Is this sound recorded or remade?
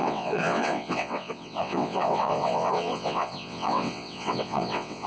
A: remade